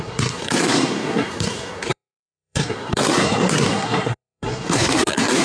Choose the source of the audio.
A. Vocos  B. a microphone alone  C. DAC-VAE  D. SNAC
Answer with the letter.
D